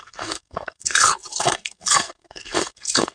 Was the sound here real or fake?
fake